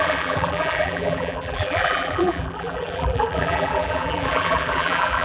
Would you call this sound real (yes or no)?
no